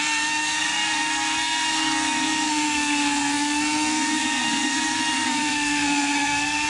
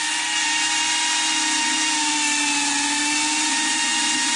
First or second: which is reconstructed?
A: first